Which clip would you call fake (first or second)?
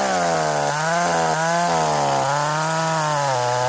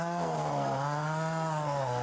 second